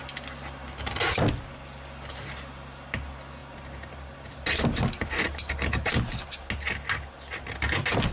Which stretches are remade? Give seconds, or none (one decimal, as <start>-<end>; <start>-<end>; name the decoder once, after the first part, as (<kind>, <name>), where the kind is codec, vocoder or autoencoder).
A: none